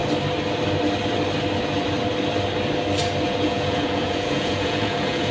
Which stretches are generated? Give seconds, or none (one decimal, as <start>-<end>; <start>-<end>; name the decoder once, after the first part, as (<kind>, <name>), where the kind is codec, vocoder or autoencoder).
3.2-5.3 (vocoder, Vocos)